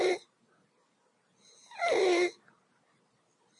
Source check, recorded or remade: recorded